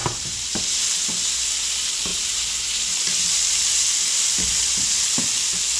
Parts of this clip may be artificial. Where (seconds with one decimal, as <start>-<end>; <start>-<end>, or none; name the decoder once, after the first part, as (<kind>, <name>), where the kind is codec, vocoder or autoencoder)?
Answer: 0.0-0.7 (vocoder, BigVGAN v2); 2.1-5.3